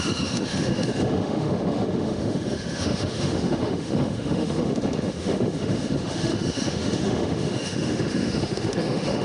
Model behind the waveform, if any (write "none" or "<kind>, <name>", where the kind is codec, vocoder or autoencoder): autoencoder, DAC-VAE